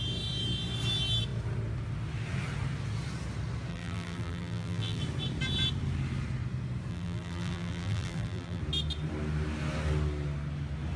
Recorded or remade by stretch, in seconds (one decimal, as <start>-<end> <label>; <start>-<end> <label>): 0.0-3.7 recorded; 3.7-5.0 remade; 5.0-6.9 recorded; 6.9-8.6 remade; 8.6-11.0 recorded